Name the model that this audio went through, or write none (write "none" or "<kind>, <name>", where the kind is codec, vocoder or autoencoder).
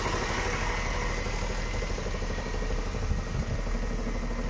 none